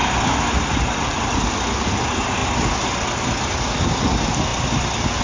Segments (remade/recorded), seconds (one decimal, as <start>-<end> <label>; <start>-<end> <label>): 0.0-5.2 recorded

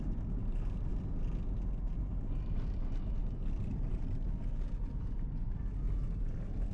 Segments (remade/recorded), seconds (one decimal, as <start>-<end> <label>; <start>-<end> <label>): 0.0-3.2 recorded; 3.2-4.3 remade; 4.3-6.7 recorded

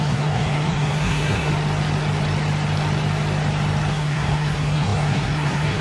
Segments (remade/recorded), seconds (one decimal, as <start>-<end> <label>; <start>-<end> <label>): 0.0-1.5 remade; 1.5-3.9 recorded; 3.9-5.8 remade

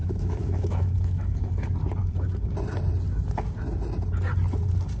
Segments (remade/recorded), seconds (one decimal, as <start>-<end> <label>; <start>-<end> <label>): 0.0-1.5 remade; 1.5-5.0 recorded